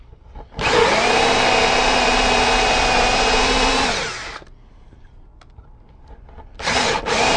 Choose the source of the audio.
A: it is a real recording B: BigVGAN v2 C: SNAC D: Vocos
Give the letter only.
B